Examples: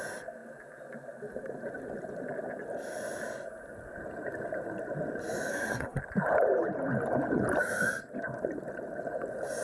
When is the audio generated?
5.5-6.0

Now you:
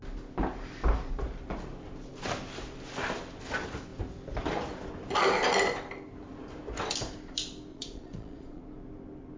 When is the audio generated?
7.7-8.6

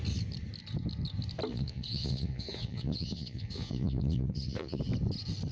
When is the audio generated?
1.5-4.8

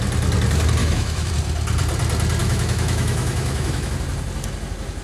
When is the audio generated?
0.8-1.3; 2.4-3.9

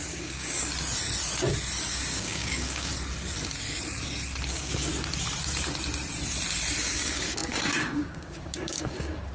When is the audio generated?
0.0-0.7; 1.9-2.9; 4.5-4.9; 6.8-9.3

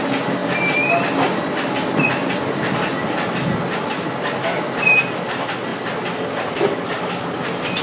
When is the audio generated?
none

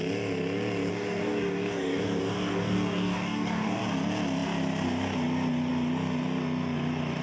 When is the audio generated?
0.9-3.8

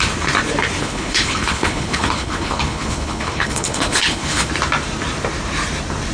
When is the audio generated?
0.8-4.5